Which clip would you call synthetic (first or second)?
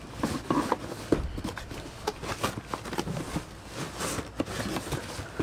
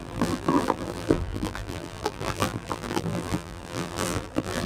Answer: second